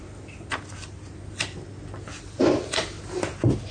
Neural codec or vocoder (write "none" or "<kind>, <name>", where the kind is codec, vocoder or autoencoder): none